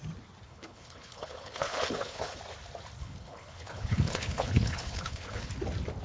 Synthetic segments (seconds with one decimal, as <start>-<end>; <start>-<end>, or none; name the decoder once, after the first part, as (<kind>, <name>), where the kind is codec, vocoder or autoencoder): 0.5-2.4 (codec, HILCodec); 3.0-5.5